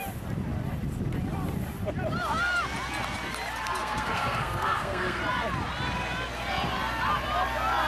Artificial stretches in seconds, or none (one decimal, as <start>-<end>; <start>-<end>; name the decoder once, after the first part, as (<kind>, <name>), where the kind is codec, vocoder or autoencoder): 3.8-5.2 (codec, SNAC)